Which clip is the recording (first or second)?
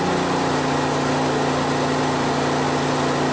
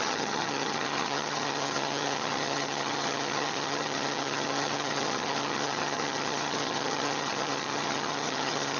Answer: first